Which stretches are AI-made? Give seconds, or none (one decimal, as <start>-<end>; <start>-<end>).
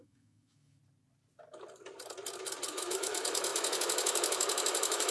0.0-0.8; 2.7-5.1